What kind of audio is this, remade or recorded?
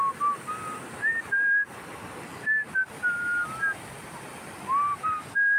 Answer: recorded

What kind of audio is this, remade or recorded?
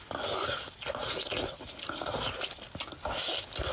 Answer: recorded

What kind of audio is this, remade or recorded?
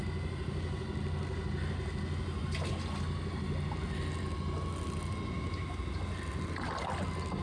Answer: recorded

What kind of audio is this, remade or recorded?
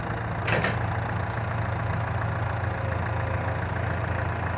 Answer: recorded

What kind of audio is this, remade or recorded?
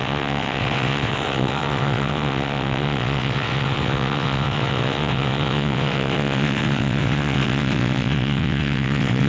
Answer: remade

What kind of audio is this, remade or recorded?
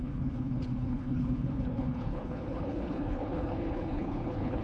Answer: remade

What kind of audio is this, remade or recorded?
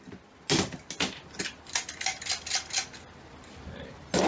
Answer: recorded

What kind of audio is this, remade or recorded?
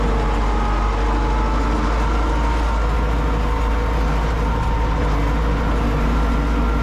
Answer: recorded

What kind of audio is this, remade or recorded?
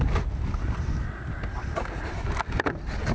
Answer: recorded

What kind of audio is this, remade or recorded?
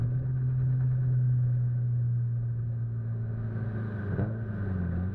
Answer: recorded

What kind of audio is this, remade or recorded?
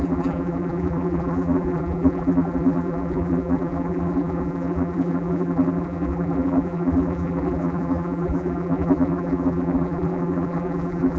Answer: remade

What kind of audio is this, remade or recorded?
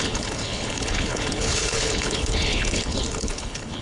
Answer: remade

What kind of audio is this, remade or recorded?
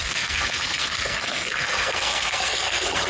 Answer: remade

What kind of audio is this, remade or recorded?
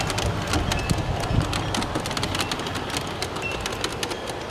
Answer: recorded